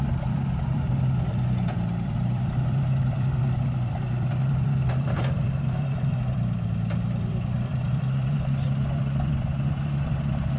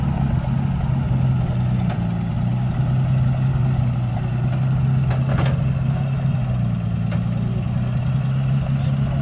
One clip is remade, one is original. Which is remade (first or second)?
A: first